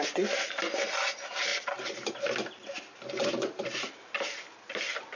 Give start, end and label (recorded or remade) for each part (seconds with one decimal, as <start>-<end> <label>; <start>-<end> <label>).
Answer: 0.0-5.2 recorded